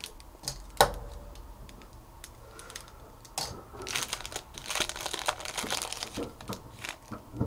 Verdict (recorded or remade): recorded